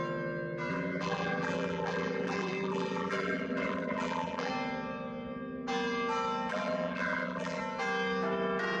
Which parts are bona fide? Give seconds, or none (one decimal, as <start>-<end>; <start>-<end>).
0.0-0.7; 4.5-6.5; 7.6-8.8